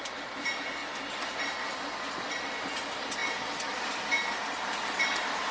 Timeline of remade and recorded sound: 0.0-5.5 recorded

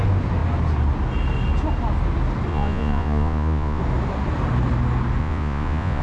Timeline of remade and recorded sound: 0.0-2.5 recorded; 2.5-3.8 remade; 3.8-5.2 recorded; 5.2-6.0 remade

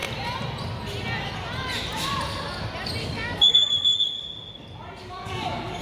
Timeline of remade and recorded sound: 0.0-3.0 recorded; 3.0-4.2 remade; 4.2-5.0 recorded; 5.0-5.8 remade

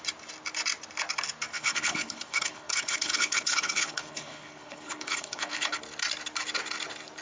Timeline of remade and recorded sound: 0.0-1.5 recorded; 1.5-5.8 remade; 5.8-7.2 recorded

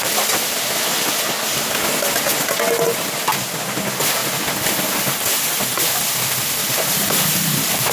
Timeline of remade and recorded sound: 0.0-6.6 recorded; 6.6-7.9 remade

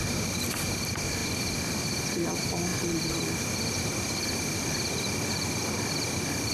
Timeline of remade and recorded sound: 0.0-5.6 remade; 5.6-6.5 recorded

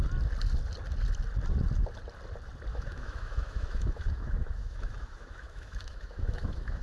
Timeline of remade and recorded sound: 0.0-2.7 recorded; 2.7-6.8 remade

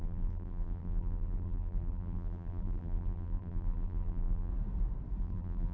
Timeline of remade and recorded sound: 0.0-4.5 remade; 4.5-5.2 recorded; 5.2-5.7 remade